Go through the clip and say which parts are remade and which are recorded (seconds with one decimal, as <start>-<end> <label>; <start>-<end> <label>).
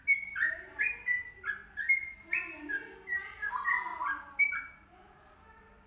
0.0-5.9 recorded